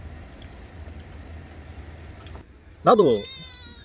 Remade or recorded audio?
remade